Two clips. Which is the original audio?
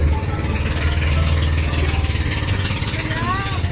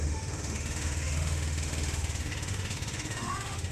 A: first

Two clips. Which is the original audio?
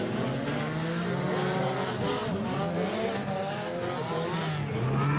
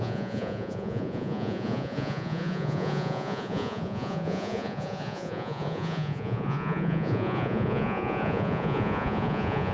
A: first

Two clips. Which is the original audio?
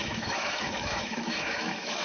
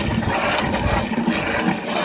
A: second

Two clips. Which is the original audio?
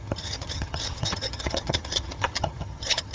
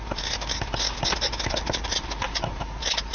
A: second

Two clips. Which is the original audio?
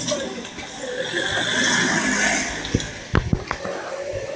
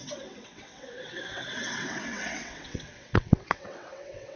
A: first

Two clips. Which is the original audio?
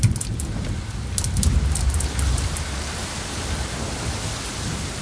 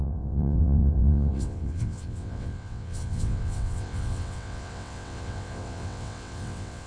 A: first